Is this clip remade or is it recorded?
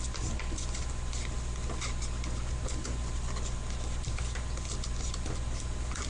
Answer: recorded